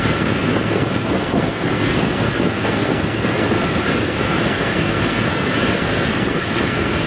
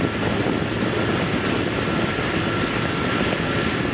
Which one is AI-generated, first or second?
first